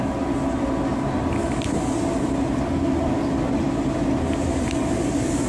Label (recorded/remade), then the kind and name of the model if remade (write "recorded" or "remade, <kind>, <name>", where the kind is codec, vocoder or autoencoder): recorded